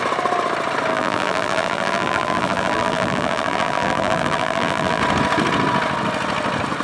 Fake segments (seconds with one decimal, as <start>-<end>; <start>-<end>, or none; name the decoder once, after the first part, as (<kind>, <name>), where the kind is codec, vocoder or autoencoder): 0.9-5.0 (vocoder, BigVGAN v2)